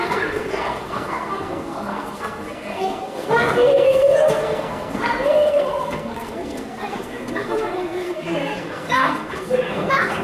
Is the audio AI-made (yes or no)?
yes